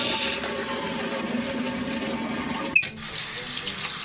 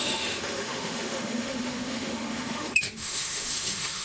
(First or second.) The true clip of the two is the first